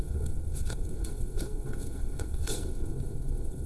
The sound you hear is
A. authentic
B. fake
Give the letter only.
B